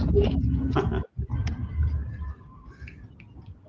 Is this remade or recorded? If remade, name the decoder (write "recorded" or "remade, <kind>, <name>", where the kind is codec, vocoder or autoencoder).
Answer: recorded